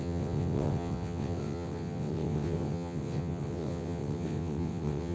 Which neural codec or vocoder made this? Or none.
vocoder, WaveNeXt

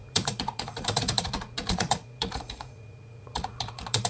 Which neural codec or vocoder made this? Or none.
vocoder, Vocos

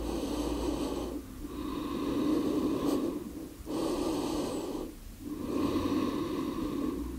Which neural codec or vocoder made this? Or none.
none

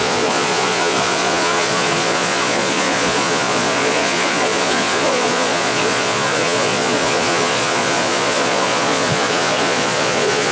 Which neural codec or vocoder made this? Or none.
vocoder, Vocos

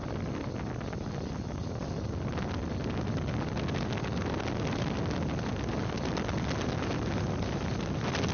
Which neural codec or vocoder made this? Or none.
none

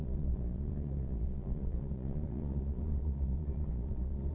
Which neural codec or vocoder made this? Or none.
vocoder, Vocos